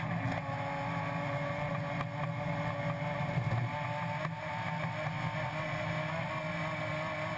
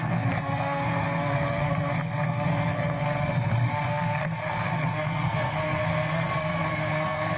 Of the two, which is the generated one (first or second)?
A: second